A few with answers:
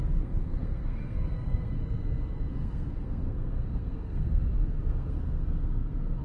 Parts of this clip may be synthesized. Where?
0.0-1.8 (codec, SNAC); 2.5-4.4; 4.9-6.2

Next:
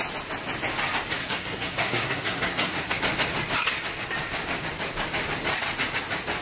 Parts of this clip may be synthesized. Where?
1.2-3.0 (codec, SNAC)

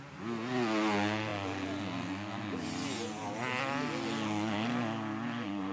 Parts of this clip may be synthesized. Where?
none

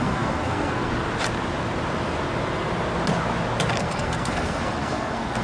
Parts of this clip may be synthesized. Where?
0.0-0.9 (codec, SNAC); 3.7-5.4

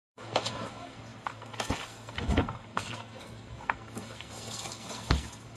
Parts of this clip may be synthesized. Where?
0.0-5.6 (codec, SNAC)

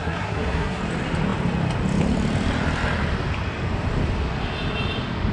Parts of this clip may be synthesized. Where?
0.0-0.8 (codec, SNAC)